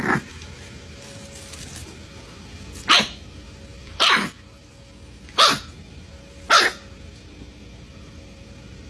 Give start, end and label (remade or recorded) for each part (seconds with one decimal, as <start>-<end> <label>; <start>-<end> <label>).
0.0-3.7 recorded; 3.7-4.9 remade; 4.9-8.9 recorded